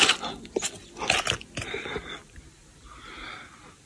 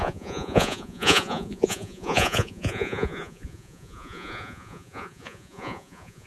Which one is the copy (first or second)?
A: second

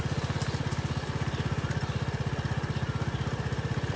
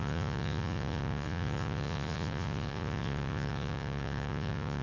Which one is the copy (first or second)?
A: second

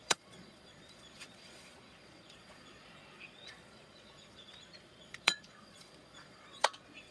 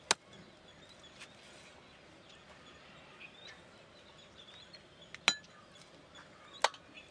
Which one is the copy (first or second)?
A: first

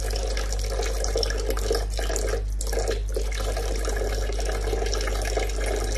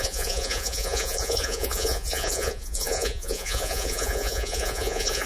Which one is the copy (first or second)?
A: second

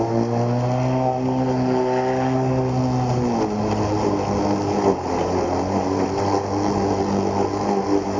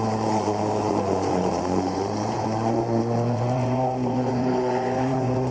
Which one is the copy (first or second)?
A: second